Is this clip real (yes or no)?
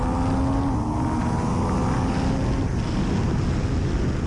yes